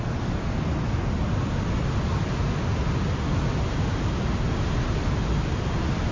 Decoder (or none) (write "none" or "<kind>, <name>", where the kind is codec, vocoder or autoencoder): none